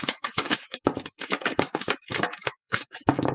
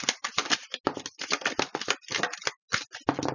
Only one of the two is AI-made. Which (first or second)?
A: first